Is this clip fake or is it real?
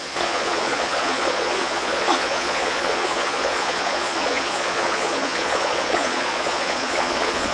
fake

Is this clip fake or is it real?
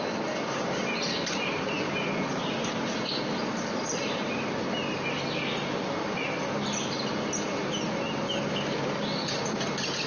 real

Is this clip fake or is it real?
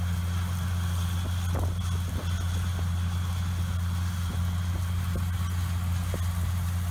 real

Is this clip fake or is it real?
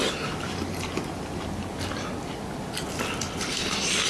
real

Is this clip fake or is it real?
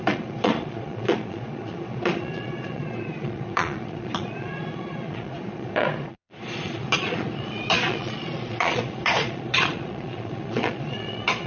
fake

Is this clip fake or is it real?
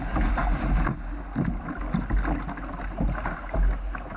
real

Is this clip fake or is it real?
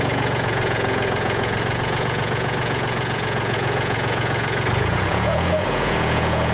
fake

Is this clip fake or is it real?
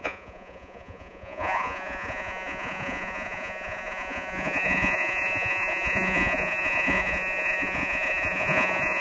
fake